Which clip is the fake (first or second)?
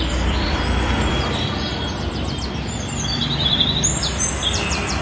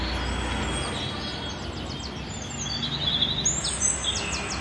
first